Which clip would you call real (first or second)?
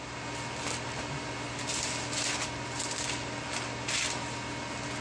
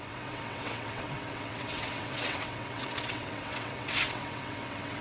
first